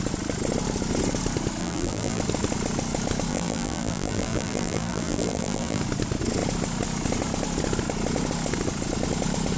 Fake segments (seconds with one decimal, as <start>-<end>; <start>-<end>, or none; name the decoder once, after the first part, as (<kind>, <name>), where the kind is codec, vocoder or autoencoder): 1.6-2.2 (vocoder, BigVGAN v2); 3.3-5.8